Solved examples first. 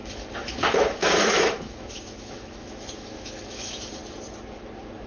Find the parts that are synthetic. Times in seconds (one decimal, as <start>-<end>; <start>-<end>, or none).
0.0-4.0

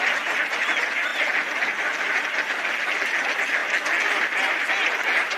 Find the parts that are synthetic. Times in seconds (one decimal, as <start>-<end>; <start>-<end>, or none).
none

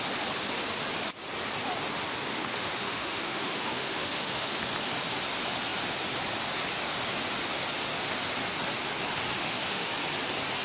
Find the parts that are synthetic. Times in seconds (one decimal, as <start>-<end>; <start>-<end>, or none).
2.3-4.6; 9.4-9.9